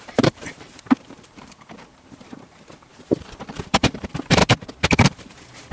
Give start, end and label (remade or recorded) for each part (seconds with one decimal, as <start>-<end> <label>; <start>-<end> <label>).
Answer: 0.0-2.9 remade; 2.9-3.7 recorded; 3.7-4.4 remade; 4.4-4.9 recorded; 4.9-5.7 remade